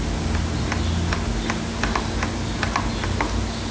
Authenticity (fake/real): real